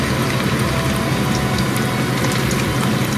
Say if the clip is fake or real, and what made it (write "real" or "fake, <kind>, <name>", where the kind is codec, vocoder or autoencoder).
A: real